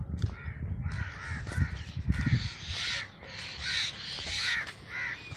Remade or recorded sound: recorded